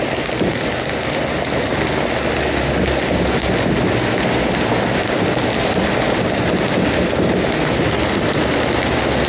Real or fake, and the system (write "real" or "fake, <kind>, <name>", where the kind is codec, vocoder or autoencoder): real